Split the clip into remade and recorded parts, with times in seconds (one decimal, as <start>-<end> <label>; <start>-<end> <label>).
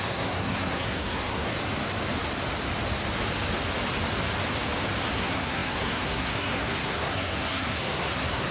0.0-1.5 remade; 1.5-5.1 recorded; 5.1-8.5 remade